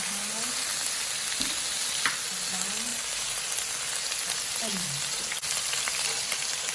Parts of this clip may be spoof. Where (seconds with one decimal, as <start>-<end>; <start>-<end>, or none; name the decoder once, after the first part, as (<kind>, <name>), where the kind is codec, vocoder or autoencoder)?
2.9-3.4 (vocoder, BigVGAN v2)

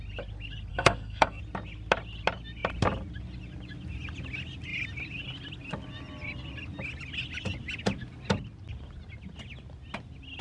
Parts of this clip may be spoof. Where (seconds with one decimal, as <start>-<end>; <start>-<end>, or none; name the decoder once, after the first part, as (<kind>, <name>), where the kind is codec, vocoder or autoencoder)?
0.7-1.4 (codec, SNAC)

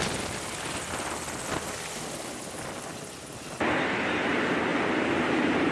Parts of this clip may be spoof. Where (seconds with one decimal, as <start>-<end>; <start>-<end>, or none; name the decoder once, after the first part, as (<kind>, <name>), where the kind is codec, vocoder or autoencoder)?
4.7-5.7 (vocoder, BigVGAN v2)

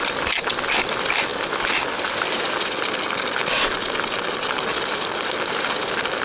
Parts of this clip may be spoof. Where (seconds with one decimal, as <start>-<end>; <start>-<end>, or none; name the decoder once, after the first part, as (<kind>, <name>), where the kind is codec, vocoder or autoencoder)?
none

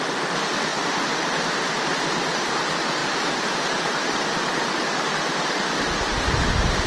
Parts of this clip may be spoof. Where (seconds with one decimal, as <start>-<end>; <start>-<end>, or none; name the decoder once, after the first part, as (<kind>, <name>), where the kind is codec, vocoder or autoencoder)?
none

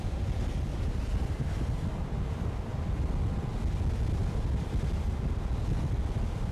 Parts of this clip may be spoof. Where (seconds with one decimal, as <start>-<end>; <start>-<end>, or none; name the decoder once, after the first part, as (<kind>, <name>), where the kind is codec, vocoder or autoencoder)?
0.7-1.4 (vocoder, BigVGAN v2); 4.2-5.2